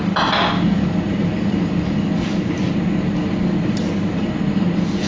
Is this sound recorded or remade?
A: recorded